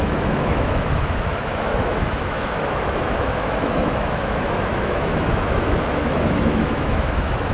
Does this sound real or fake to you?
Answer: fake